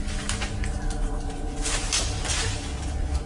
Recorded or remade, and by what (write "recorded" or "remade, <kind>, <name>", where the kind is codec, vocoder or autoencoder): recorded